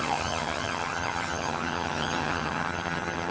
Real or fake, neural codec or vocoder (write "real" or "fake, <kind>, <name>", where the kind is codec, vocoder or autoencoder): fake, vocoder, HiFi-GAN